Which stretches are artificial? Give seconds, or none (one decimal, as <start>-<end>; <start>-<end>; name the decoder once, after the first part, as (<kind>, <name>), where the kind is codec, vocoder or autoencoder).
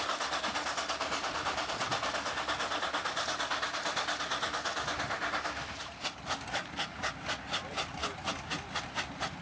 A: none